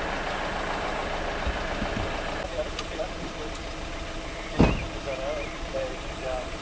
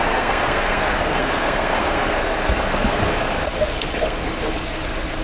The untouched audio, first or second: first